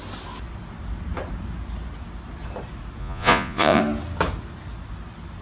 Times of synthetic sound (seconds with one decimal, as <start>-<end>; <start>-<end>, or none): 3.0-3.8